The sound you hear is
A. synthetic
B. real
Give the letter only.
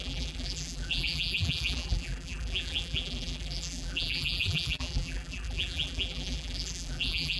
A